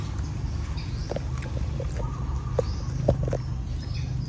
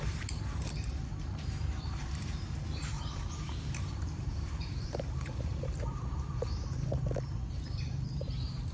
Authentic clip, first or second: first